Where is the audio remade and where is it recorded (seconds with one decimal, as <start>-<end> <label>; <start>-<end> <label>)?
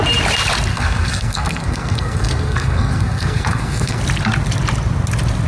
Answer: 0.0-0.7 recorded; 0.7-4.0 remade; 4.0-5.5 recorded